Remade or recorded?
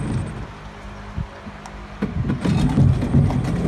recorded